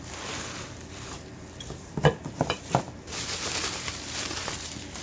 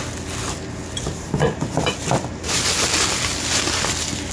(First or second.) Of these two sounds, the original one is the second